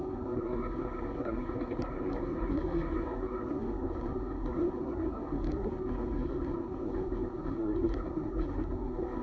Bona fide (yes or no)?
no